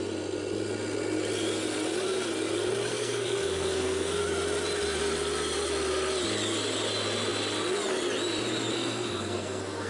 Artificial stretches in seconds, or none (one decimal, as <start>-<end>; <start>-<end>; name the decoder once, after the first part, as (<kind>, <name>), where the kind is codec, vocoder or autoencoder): 2.9-4.2 (codec, SNAC); 8.7-9.9